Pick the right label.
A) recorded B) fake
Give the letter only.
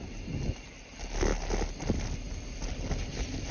A